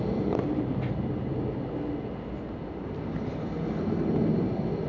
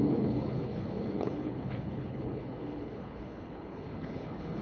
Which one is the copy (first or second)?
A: second